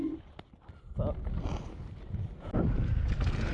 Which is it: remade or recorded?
recorded